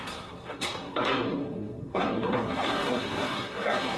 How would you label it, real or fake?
fake